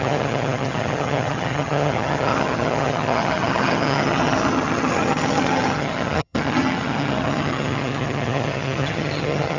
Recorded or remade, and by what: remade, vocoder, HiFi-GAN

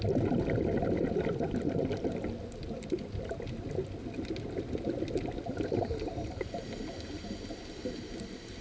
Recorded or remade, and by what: recorded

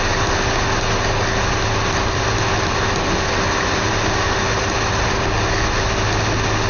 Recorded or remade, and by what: recorded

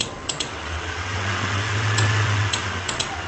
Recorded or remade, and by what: remade, vocoder, WaveNeXt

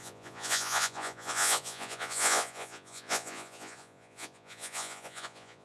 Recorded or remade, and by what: remade, vocoder, Vocos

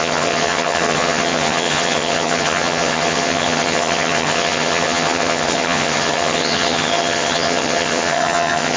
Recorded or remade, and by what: remade, vocoder, HiFi-GAN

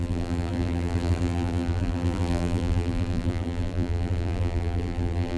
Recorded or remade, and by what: remade, vocoder, BigVGAN v2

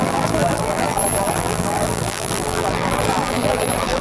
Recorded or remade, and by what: remade, vocoder, BigVGAN v2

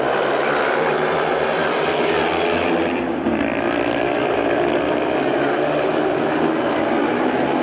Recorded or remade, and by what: remade, vocoder, BigVGAN v2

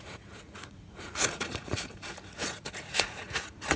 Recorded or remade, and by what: remade, vocoder, Vocos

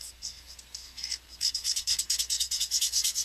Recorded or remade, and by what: remade, codec, SNAC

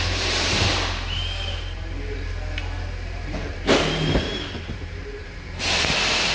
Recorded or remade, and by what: remade, vocoder, BigVGAN v2